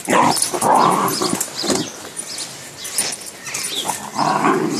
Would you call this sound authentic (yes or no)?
yes